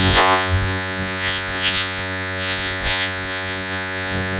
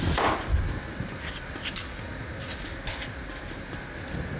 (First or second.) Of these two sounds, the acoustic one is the second